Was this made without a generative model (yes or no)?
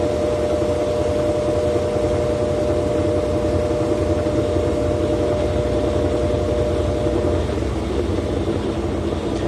yes